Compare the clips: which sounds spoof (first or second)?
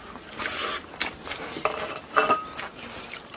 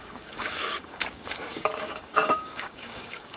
second